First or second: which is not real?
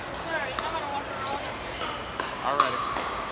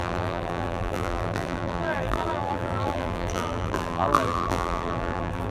second